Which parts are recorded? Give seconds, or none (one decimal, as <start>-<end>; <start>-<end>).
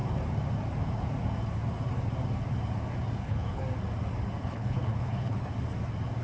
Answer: 0.0-3.2; 3.6-4.4; 5.5-6.2